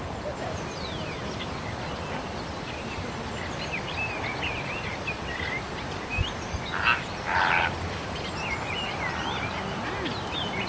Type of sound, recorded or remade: recorded